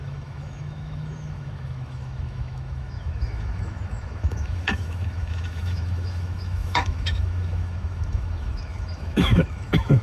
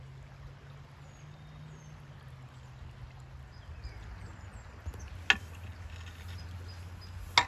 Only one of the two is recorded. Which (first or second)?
second